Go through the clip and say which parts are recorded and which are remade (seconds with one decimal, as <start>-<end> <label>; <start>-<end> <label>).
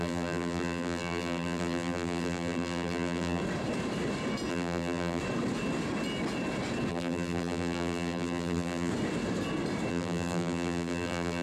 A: 0.0-3.4 remade; 3.4-4.5 recorded; 4.5-5.2 remade; 5.2-6.9 recorded; 6.9-8.9 remade; 8.9-9.9 recorded; 9.9-11.4 remade